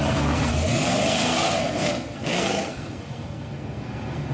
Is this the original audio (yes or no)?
no